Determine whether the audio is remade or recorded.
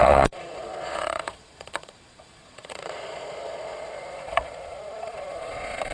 remade